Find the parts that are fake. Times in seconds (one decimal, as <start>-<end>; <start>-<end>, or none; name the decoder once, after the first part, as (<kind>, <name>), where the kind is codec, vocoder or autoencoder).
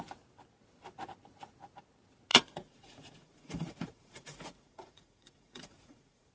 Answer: 2.3-6.3 (vocoder, Vocos)